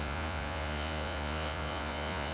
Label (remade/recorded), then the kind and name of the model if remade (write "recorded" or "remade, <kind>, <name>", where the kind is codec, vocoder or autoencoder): remade, vocoder, Vocos